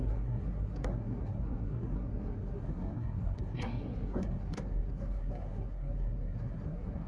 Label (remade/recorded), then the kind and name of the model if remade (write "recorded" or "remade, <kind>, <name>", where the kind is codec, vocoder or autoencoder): remade, codec, SNAC